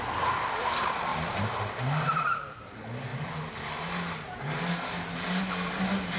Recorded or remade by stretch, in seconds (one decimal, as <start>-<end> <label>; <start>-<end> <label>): 0.0-1.1 recorded; 1.1-2.6 remade; 2.6-3.1 recorded; 3.1-5.4 remade; 5.4-6.2 recorded